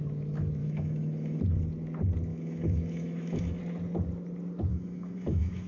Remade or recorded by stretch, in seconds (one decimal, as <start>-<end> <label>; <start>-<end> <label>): 0.0-0.6 recorded; 0.6-1.4 remade; 1.4-2.3 recorded; 2.3-3.6 remade; 3.6-4.7 recorded; 4.7-5.7 remade